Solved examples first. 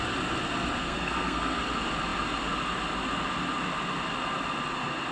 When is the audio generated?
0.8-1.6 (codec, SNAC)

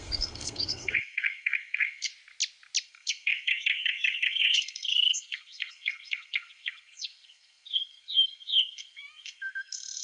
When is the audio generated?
0.0-2.1 (codec, SNAC); 2.8-10.0

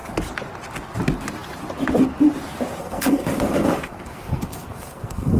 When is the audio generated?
2.8-5.4 (codec, SNAC)

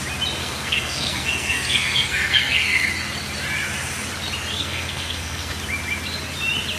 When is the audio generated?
0.4-2.9 (codec, SNAC); 4.5-5.5

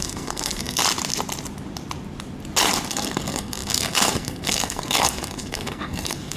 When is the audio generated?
0.0-0.8 (codec, SNAC); 2.9-6.4

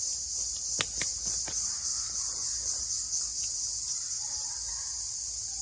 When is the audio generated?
none

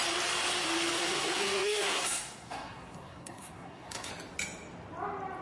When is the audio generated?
0.9-4.1 (codec, SNAC)